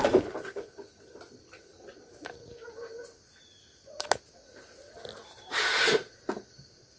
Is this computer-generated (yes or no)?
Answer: no